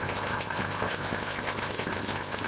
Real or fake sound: fake